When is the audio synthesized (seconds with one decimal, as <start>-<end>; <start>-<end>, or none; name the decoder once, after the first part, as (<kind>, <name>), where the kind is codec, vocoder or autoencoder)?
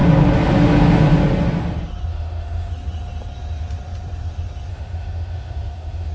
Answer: 2.1-2.7 (autoencoder, DAC-VAE); 4.7-6.1